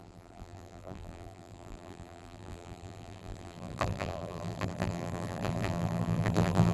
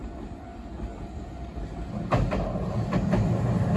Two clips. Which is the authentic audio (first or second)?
second